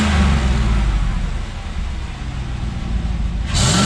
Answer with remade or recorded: recorded